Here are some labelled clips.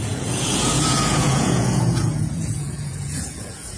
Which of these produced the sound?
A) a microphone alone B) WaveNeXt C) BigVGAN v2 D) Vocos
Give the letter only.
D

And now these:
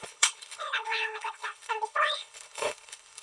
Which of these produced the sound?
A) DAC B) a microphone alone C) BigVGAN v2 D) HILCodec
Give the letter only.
D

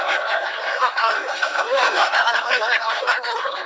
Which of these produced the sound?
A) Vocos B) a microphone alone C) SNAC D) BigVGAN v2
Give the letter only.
C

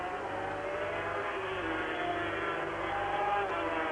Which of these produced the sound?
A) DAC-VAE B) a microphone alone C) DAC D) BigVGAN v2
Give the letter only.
B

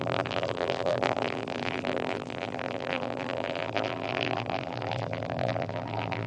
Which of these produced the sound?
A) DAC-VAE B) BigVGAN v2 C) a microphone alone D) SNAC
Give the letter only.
B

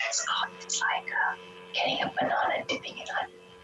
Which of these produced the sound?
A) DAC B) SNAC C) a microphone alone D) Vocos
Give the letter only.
C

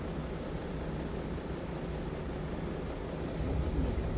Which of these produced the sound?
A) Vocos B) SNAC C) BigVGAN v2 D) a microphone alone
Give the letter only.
D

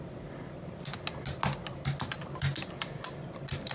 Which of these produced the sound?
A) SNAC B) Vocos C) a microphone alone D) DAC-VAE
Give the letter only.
C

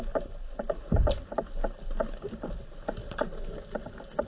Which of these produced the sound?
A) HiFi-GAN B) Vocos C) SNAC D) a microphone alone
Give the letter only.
D